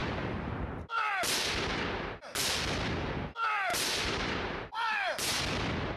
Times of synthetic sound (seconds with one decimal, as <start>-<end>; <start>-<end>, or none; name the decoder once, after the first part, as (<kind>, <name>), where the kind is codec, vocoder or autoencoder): 0.0-1.1 (vocoder, BigVGAN v2); 3.7-5.4

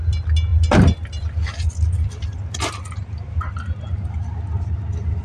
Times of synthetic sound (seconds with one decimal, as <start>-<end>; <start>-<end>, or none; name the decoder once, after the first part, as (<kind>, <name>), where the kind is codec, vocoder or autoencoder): 0.5-3.4 (vocoder, BigVGAN v2)

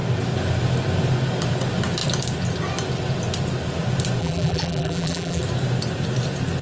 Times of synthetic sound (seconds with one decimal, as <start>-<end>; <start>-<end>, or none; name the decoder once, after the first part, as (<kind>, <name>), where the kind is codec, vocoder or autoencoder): 4.2-5.4 (vocoder, BigVGAN v2)

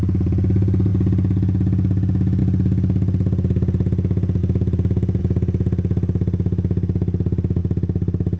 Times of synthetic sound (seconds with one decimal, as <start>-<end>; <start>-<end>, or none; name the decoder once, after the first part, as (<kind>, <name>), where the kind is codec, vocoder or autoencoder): 4.4-5.2 (vocoder, BigVGAN v2)

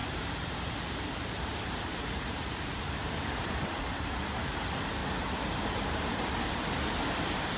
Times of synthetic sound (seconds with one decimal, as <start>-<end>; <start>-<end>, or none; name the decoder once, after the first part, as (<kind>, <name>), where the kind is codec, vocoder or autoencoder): 0.0-4.6 (vocoder, BigVGAN v2); 5.0-6.1

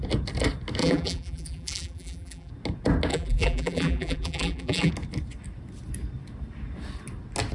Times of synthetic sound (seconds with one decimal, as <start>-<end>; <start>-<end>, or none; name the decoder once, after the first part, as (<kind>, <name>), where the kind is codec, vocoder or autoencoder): 0.8-2.5 (vocoder, BigVGAN v2); 3.1-4.9

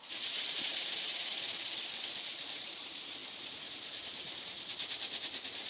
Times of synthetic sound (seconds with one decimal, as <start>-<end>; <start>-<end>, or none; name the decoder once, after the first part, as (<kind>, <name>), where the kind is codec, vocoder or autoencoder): 0.0-3.2 (vocoder, BigVGAN v2)